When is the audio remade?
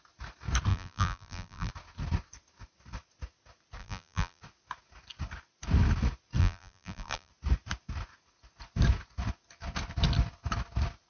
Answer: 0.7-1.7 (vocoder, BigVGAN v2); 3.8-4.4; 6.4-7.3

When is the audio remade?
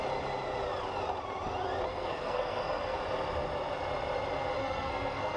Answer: 1.9-3.0 (codec, SNAC); 4.6-5.4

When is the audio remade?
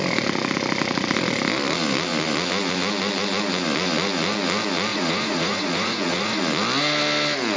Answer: 4.9-6.4 (vocoder, Vocos)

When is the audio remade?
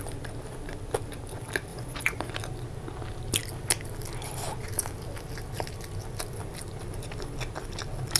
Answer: 1.7-2.3 (vocoder, Vocos)